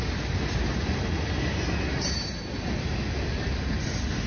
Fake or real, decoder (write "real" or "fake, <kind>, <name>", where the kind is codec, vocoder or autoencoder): real